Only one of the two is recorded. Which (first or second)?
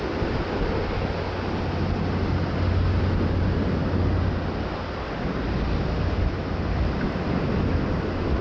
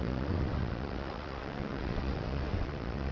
first